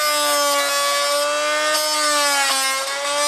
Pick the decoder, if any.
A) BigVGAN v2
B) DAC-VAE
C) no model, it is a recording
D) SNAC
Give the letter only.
C